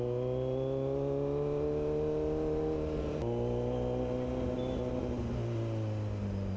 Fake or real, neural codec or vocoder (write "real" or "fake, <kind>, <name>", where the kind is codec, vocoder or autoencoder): real